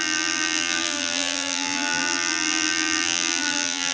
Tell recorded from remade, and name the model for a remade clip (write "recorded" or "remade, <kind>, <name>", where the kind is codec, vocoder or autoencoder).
remade, vocoder, BigVGAN v2